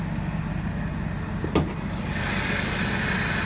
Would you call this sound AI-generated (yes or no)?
no